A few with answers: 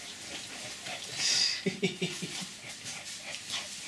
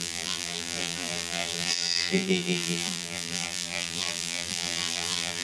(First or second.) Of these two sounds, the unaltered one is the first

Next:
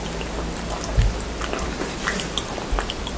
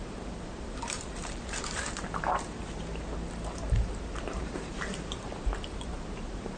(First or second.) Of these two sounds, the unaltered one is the first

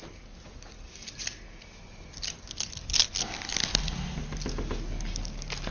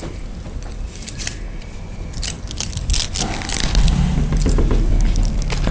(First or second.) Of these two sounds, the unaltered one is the first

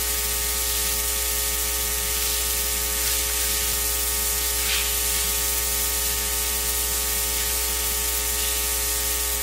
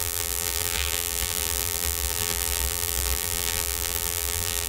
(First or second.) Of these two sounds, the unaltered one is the first